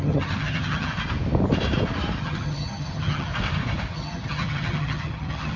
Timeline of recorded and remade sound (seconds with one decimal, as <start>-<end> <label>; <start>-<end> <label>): 0.0-0.9 remade; 0.9-2.2 recorded; 2.2-3.3 remade; 3.3-3.9 recorded; 3.9-5.6 remade